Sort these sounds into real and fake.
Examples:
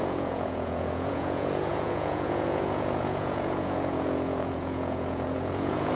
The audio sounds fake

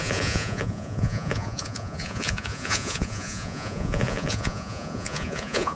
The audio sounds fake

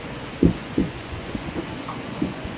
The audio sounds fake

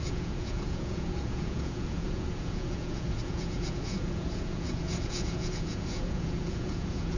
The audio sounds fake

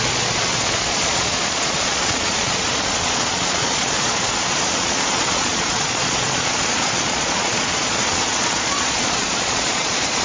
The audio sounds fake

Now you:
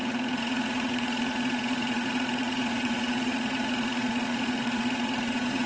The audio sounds fake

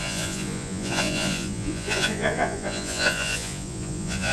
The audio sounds fake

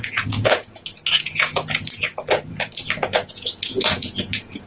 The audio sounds fake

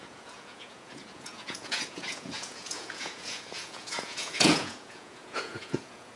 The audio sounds fake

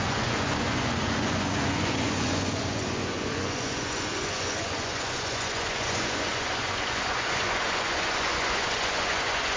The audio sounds fake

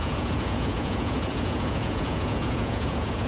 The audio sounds fake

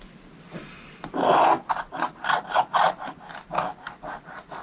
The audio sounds real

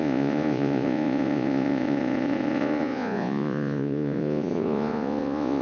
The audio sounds fake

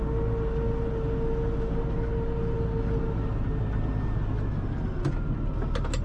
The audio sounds real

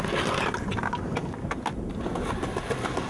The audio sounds real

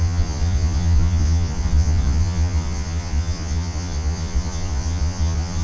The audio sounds fake